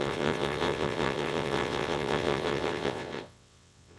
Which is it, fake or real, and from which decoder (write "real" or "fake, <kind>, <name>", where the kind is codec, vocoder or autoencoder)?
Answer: fake, vocoder, WaveNeXt